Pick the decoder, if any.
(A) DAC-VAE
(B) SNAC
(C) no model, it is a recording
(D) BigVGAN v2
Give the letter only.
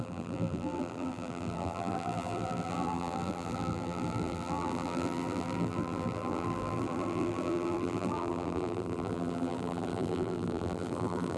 D